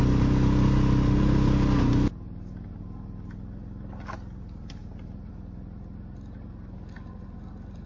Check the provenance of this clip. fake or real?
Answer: real